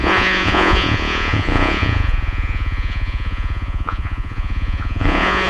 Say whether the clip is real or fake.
fake